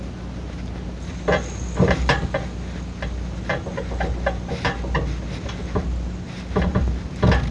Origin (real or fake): real